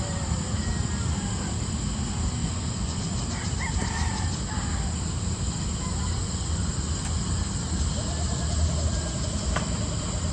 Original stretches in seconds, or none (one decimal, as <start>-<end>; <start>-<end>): 0.0-2.4; 3.0-6.2; 6.7-10.3